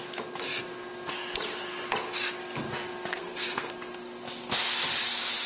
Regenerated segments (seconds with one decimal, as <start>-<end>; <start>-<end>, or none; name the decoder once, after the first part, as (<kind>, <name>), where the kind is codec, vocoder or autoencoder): 3.1-3.7 (codec, SNAC)